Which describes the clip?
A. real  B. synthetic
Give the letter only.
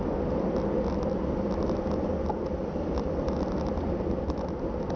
A